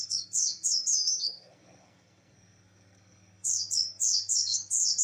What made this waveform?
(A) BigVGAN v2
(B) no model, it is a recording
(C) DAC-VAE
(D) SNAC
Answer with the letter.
D